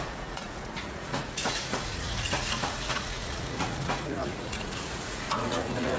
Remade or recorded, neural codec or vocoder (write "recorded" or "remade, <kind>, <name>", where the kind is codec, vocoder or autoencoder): remade, vocoder, Vocos